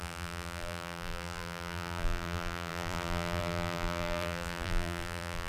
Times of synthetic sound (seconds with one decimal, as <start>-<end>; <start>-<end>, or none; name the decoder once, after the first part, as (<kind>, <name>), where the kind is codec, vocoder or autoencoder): 0.0-5.5 (vocoder, BigVGAN v2)